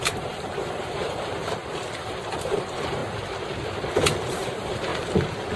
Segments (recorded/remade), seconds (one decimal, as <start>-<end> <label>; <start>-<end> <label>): 0.0-1.6 remade; 1.6-2.4 recorded; 2.4-3.0 remade; 3.0-4.3 recorded; 4.3-4.9 remade; 4.9-5.6 recorded